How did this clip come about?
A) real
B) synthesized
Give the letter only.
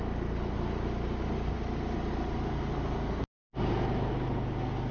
A